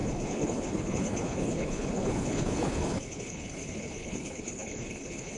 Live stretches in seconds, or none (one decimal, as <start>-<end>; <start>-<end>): none